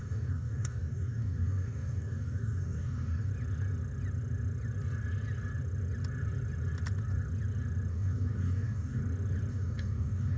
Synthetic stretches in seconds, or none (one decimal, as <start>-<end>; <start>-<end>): 0.0-3.3; 7.9-9.0; 9.5-10.4